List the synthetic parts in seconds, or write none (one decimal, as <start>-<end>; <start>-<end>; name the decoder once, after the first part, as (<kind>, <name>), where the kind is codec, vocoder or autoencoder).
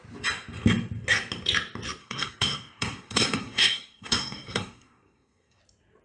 2.0-5.6 (codec, SNAC)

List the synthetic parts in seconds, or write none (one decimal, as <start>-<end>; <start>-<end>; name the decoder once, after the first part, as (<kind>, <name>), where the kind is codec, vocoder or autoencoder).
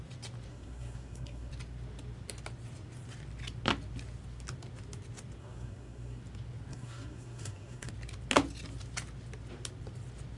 0.5-1.5 (codec, SNAC); 5.4-6.2; 6.7-7.9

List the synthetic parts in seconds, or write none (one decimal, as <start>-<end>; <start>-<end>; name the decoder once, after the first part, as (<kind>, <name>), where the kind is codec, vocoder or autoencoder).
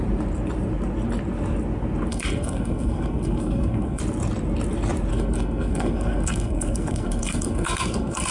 2.1-4.0 (codec, SNAC); 5.1-8.3